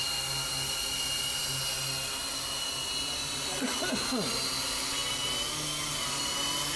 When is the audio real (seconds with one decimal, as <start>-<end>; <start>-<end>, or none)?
0.0-6.8